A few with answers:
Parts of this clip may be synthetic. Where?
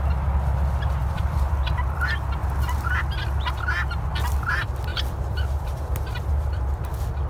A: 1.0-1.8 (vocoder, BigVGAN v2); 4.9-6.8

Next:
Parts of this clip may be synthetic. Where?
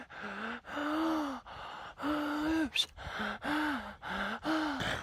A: none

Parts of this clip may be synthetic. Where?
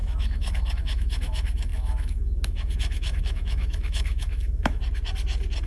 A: 0.0-4.8 (autoencoder, DAC-VAE)